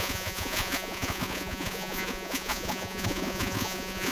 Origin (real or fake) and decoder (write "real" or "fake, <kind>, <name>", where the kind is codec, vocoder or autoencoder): fake, vocoder, Vocos